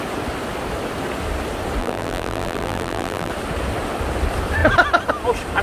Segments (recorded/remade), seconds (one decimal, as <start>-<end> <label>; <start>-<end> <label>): 0.0-1.8 recorded; 1.8-3.3 remade; 3.3-5.6 recorded